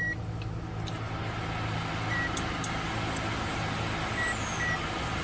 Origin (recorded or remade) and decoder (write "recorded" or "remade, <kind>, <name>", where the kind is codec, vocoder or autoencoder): recorded